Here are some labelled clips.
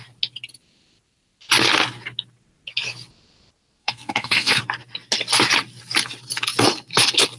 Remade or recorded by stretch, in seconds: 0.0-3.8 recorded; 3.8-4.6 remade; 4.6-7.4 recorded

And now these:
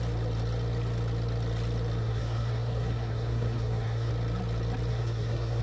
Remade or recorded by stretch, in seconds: 0.0-2.0 recorded; 2.0-4.1 remade; 4.1-4.9 recorded; 4.9-5.6 remade

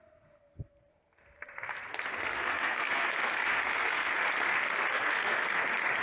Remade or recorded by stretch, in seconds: 0.0-2.2 recorded; 2.2-4.1 remade; 4.1-4.9 recorded; 4.9-5.6 remade; 5.6-6.0 recorded

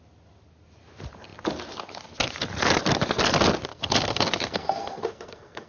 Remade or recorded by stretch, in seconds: 0.0-3.7 recorded; 3.7-5.7 remade

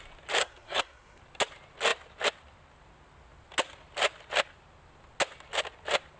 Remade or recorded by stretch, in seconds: 0.0-0.4 recorded; 0.4-1.2 remade; 1.2-6.2 recorded

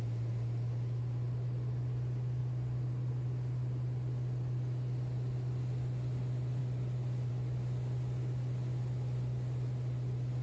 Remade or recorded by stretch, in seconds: 0.0-10.4 recorded

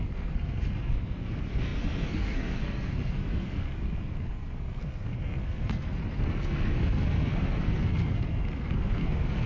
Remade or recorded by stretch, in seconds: 0.0-9.5 remade